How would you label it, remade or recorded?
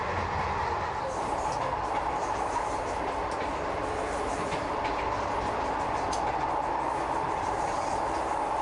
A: recorded